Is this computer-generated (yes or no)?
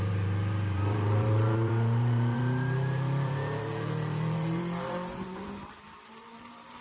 yes